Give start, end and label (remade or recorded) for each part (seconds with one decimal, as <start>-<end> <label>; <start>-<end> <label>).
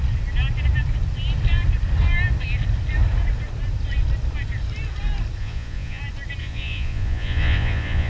0.0-5.4 recorded; 5.4-6.0 remade; 6.0-6.4 recorded; 6.4-8.1 remade